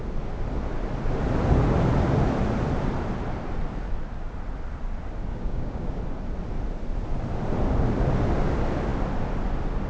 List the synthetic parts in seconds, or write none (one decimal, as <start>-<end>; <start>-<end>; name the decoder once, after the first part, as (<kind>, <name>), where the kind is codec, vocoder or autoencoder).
5.3-6.0 (codec, DAC)